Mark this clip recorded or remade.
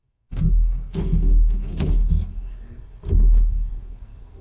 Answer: remade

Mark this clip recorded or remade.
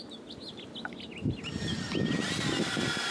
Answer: recorded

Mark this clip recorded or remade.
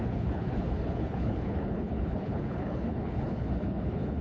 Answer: remade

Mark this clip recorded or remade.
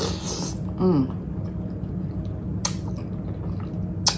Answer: recorded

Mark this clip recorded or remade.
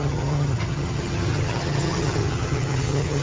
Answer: remade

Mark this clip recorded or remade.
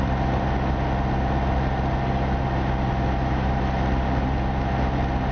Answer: recorded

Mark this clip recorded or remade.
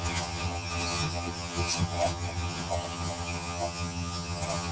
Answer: remade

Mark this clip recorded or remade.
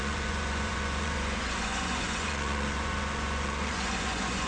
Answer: remade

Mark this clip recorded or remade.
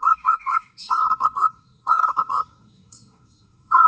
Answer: remade